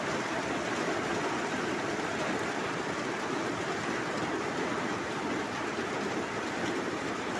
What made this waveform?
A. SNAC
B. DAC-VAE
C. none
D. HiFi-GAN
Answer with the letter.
C